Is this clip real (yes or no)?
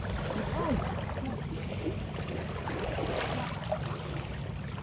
yes